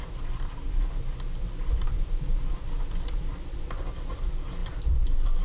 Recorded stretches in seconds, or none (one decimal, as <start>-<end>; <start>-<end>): 0.0-1.4; 3.9-4.6